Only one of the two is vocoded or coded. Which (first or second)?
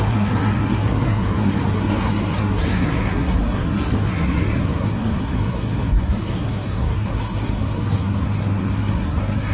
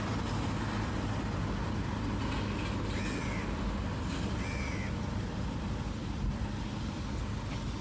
first